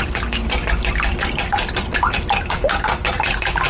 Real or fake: real